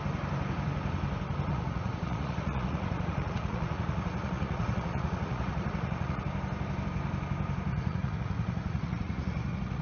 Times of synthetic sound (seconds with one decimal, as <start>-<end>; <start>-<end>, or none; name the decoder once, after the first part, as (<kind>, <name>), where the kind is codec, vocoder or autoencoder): 1.5-6.2 (vocoder, Vocos); 7.7-9.8